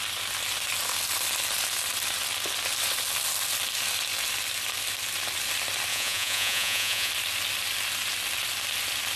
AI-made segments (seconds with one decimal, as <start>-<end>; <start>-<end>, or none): 5.9-7.1